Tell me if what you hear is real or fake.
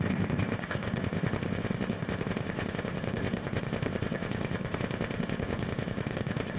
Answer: fake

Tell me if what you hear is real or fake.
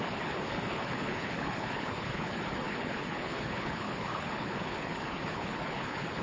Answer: fake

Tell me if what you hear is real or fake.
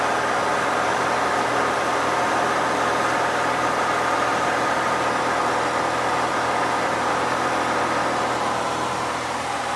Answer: real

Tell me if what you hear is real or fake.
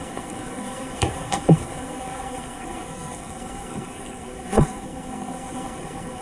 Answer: fake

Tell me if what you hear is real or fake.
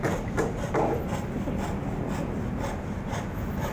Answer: real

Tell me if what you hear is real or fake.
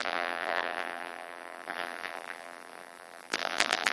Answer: fake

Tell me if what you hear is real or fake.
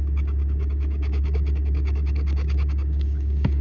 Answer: fake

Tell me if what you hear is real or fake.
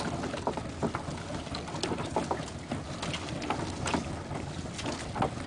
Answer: real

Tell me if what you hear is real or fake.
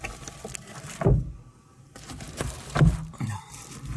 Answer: real